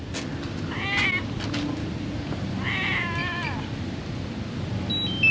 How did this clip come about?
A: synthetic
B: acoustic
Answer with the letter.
B